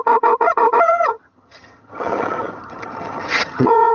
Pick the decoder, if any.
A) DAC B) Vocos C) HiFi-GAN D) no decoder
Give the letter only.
C